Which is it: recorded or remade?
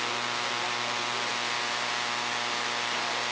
recorded